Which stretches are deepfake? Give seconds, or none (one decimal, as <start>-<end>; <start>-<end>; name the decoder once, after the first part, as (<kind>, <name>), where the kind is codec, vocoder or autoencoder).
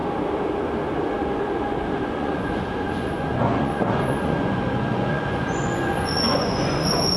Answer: 1.2-7.2 (vocoder, Vocos)